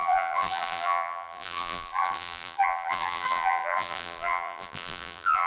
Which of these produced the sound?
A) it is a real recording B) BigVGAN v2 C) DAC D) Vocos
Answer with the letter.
B